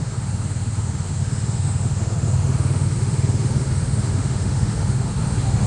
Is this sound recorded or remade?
remade